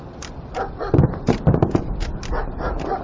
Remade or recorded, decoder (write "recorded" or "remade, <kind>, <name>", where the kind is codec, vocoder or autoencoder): recorded